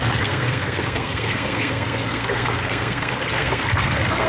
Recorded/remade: remade